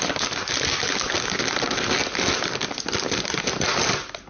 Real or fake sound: real